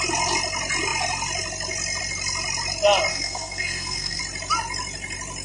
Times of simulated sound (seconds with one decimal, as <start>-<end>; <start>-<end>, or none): 3.1-4.2